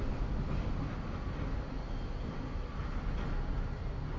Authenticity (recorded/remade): recorded